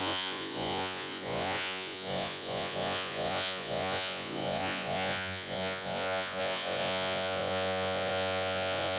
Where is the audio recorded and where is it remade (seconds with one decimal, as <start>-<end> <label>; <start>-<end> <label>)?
0.0-9.0 remade